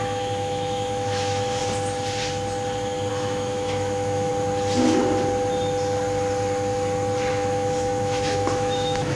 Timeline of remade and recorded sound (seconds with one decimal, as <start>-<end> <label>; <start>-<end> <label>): 0.0-1.6 remade; 1.6-3.1 recorded; 3.1-4.3 remade; 4.3-7.3 recorded; 7.3-9.2 remade